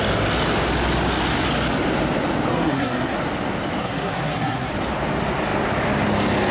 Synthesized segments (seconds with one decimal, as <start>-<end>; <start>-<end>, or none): 2.5-3.2; 3.8-4.7